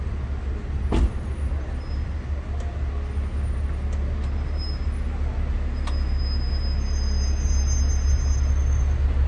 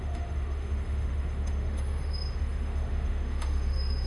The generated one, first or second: second